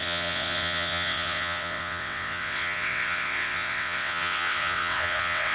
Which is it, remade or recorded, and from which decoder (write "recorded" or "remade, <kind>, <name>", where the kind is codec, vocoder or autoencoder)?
remade, vocoder, WaveNeXt